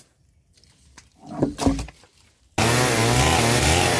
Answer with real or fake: real